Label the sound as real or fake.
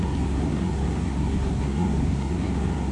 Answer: fake